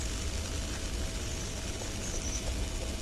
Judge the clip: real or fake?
real